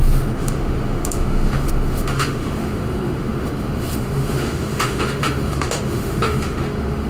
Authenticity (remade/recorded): remade